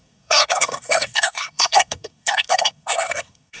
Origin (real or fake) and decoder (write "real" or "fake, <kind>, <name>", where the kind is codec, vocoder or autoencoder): fake, codec, SNAC